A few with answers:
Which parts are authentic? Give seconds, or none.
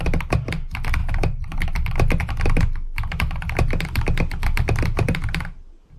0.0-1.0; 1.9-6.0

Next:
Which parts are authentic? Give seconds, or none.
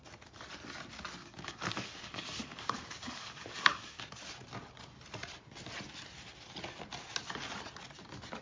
0.0-1.2; 4.0-8.4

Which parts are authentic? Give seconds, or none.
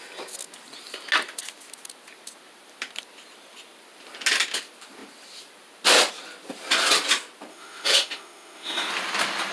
0.0-7.5; 8.9-9.5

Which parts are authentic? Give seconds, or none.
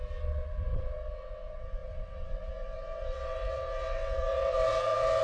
none